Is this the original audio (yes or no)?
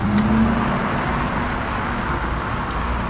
yes